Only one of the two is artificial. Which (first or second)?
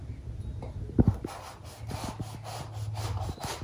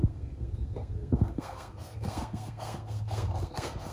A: second